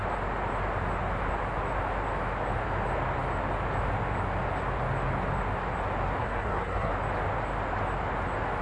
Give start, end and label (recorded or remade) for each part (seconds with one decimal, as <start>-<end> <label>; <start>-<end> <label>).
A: 0.0-6.2 recorded; 6.2-6.9 remade; 6.9-8.6 recorded